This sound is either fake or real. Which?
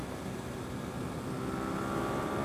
real